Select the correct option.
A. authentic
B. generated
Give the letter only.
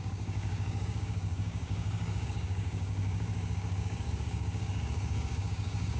B